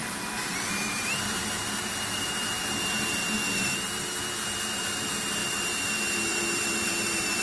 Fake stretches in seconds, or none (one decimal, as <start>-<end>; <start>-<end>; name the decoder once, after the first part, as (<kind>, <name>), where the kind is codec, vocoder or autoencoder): 0.0-2.6 (vocoder, BigVGAN v2); 5.4-7.4